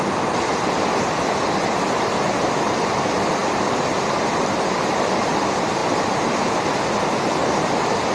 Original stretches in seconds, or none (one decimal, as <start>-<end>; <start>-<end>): 0.0-3.4; 5.3-8.1